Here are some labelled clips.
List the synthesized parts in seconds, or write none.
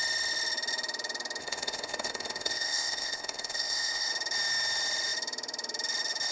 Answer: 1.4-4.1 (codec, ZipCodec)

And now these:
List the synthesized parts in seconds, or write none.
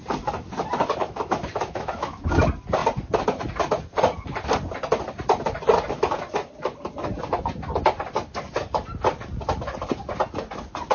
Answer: 1.0-2.4 (autoencoder, DAC-VAE)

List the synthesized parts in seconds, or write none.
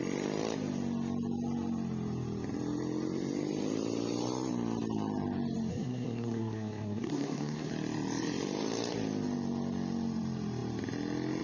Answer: 5.7-7.7 (codec, SNAC)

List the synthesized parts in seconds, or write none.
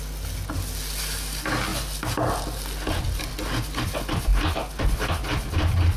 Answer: none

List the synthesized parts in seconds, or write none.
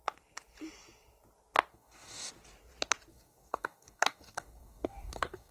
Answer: 1.7-2.3 (codec, DAC); 3.1-5.5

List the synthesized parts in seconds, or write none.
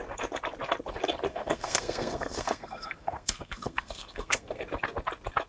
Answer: 1.3-4.6 (codec, SNAC)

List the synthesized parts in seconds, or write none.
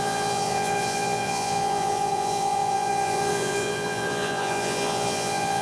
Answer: 0.0-5.6 (vocoder, Vocos)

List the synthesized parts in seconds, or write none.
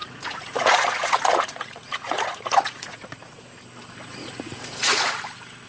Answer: 0.0-3.4 (vocoder, Vocos); 4.2-5.2